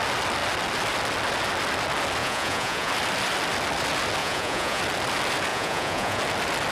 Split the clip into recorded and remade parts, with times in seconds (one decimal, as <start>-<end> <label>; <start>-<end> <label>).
0.0-2.2 recorded; 2.2-2.9 remade; 2.9-4.2 recorded; 4.2-4.8 remade; 4.8-5.5 recorded; 5.5-6.2 remade; 6.2-6.7 recorded